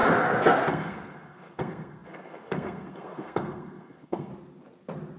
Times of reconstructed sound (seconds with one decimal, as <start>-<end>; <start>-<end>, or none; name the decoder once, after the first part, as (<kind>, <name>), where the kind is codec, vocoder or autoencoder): 0.7-4.3 (codec, SNAC)